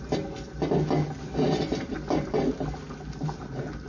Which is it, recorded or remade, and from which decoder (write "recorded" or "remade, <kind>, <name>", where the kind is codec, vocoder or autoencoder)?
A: recorded